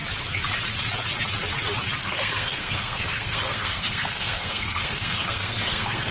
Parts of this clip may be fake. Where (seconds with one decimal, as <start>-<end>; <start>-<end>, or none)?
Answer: 2.0-6.1